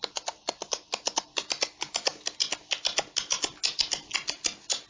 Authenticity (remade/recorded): recorded